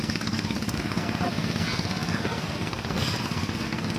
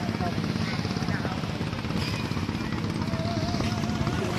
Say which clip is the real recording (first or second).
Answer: second